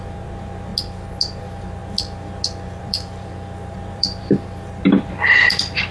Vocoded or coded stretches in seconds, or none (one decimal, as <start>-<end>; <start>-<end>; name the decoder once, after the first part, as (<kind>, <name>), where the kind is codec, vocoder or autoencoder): 0.0-0.7 (vocoder, BigVGAN v2); 1.4-1.8; 2.8-5.9